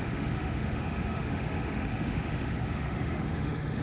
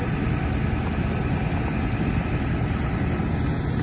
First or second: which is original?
second